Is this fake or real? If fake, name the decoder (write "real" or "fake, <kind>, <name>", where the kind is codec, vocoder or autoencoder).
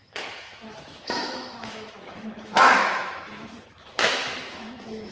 fake, autoencoder, DAC-VAE